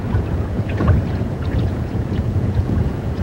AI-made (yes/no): yes